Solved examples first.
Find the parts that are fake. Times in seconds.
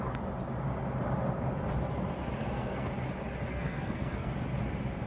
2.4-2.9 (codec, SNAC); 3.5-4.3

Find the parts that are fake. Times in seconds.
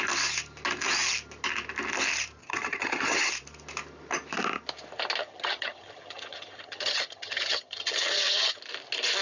2.4-3.3 (vocoder, HiFi-GAN); 5.2-8.6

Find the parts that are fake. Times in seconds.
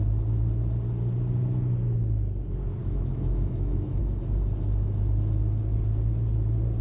2.8-4.0 (autoencoder, DAC-VAE)